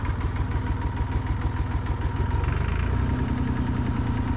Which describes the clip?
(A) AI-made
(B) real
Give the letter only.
B